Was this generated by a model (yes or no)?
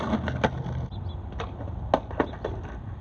no